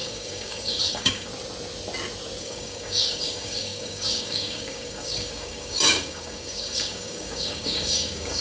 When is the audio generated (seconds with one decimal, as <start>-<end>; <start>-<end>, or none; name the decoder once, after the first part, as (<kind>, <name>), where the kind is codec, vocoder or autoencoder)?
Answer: 0.0-1.3 (codec, DAC); 2.4-8.4